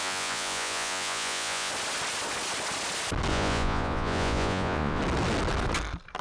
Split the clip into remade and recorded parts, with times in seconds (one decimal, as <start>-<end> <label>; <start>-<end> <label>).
0.0-1.7 remade; 1.7-3.3 recorded; 3.3-5.0 remade; 5.0-6.2 recorded